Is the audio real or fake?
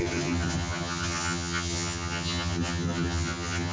fake